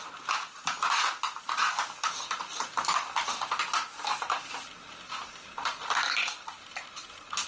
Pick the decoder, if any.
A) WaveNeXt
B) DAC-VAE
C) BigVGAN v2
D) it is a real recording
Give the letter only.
D